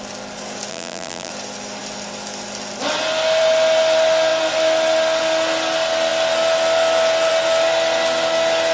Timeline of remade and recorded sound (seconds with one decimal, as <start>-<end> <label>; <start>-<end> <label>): 0.0-0.7 recorded; 0.7-1.3 remade; 1.3-8.7 recorded